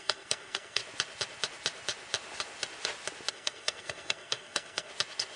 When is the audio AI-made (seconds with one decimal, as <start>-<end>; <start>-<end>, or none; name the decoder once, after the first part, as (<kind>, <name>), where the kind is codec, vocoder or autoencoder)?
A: 0.0-0.8 (codec, SNAC); 3.3-4.9